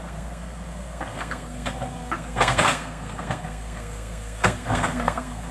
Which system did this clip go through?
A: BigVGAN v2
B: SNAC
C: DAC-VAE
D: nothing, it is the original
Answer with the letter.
B